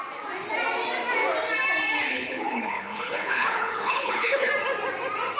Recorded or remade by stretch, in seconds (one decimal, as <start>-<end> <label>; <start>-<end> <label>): 0.0-2.1 recorded; 2.1-4.5 remade; 4.5-5.4 recorded